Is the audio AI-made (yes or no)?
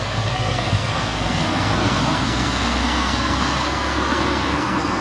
yes